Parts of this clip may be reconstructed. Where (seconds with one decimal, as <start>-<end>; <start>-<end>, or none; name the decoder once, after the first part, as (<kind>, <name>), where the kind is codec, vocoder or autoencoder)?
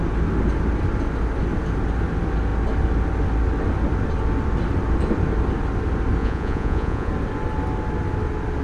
6.2-7.1 (vocoder, Vocos)